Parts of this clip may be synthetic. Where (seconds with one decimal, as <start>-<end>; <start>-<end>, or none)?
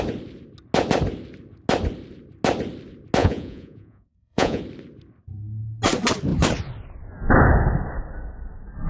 3.2-4.6